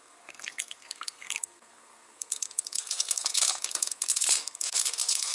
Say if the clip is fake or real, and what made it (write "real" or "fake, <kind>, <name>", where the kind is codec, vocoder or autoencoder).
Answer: fake, codec, SNAC